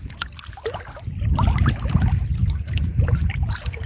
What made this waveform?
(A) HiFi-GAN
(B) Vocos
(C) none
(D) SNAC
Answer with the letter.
C